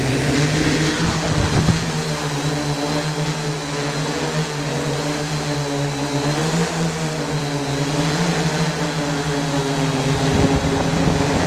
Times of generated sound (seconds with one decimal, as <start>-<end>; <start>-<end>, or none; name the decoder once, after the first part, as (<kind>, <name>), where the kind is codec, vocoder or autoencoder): none